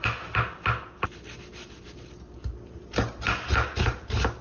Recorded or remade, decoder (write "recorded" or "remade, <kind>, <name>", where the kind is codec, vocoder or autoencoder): recorded